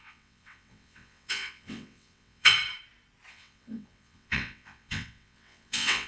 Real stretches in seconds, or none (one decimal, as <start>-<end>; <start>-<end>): 2.5-3.3